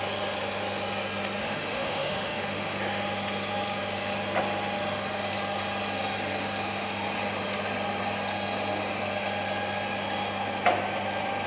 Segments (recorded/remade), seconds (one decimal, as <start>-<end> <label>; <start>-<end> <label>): 0.0-1.4 recorded; 1.4-2.8 remade; 2.8-11.5 recorded